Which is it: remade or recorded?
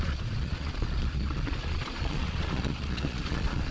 remade